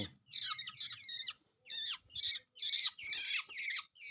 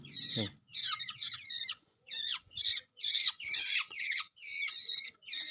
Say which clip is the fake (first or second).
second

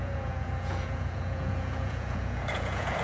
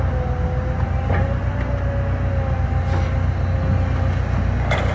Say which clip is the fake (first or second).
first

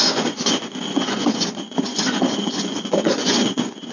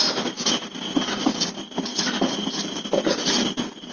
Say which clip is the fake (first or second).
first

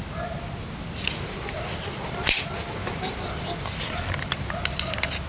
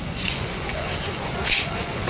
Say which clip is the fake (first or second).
second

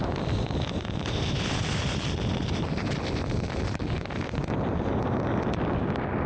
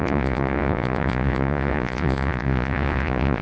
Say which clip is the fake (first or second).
second